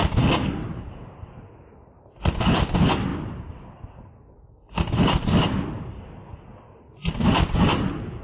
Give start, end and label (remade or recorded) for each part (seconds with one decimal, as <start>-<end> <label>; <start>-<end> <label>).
0.0-8.2 recorded